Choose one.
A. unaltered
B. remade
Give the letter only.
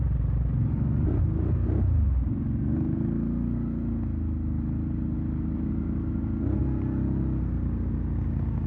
A